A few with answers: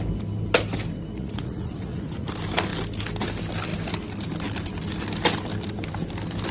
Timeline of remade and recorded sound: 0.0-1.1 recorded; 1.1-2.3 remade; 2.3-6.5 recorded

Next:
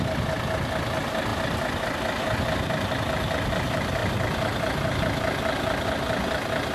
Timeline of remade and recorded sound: 0.0-6.7 recorded

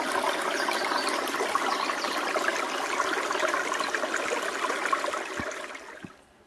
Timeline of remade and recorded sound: 0.0-6.5 recorded